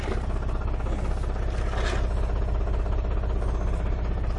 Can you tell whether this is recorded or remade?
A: recorded